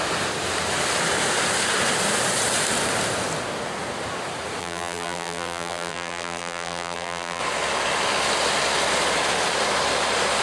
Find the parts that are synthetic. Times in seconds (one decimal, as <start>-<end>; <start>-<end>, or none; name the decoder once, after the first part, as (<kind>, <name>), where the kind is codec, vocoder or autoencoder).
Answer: 4.6-7.4 (vocoder, BigVGAN v2)